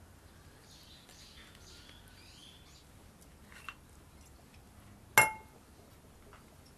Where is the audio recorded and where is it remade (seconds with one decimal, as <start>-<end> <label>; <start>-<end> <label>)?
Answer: 0.0-6.8 recorded